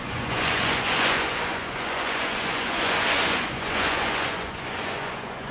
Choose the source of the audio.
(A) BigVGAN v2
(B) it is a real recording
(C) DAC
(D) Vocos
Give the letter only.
D